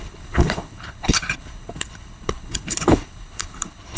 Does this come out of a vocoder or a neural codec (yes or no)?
yes